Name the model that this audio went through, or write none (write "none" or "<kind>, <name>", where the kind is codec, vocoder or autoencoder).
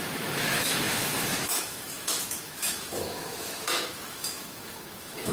autoencoder, DAC-VAE